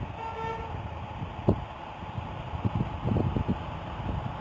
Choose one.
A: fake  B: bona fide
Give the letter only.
B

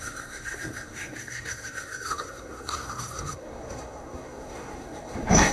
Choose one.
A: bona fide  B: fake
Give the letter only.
B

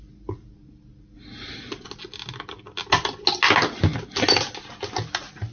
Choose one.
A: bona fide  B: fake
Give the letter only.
A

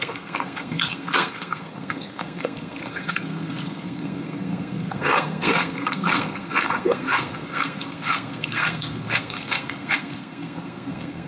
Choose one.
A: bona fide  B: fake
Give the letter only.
B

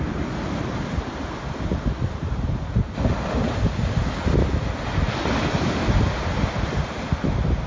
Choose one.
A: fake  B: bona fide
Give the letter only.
B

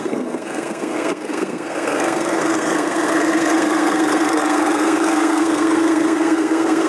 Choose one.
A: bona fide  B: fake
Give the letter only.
B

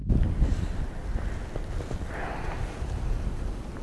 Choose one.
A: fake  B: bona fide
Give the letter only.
B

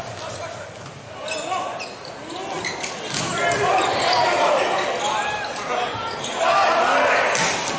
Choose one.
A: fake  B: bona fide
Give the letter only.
B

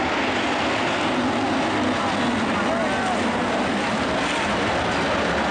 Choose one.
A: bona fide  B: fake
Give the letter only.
A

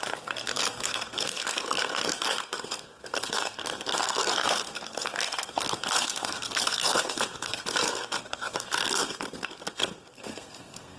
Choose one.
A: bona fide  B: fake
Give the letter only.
B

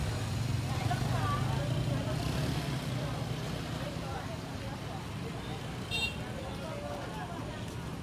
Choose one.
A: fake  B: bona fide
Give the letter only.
B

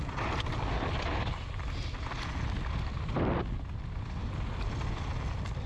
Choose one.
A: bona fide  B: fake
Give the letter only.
A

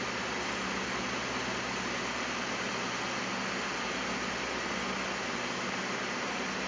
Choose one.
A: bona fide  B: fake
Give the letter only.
A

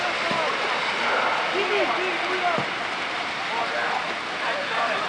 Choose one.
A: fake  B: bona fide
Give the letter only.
B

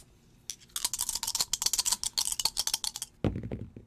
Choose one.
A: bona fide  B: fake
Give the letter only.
A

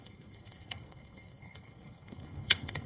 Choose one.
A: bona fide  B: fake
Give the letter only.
B